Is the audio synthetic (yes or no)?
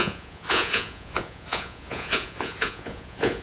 yes